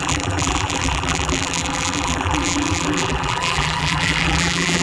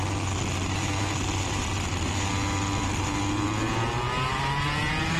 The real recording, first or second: second